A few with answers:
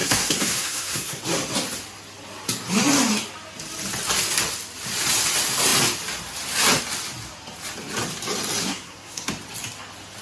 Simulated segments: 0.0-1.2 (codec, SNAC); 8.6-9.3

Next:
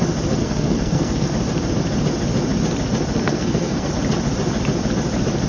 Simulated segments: 0.4-1.3 (codec, SNAC); 3.2-3.9

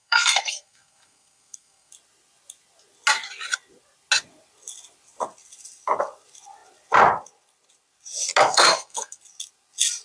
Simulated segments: 0.0-1.9 (codec, SNAC); 8.4-9.2